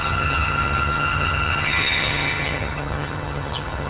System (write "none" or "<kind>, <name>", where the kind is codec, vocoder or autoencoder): vocoder, HiFi-GAN